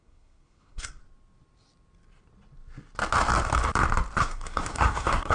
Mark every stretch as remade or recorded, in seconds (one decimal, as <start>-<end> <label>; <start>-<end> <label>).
0.0-1.0 remade; 1.0-4.2 recorded; 4.2-5.3 remade